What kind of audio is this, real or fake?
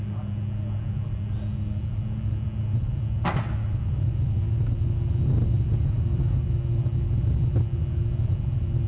real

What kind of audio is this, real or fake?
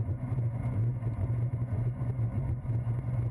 fake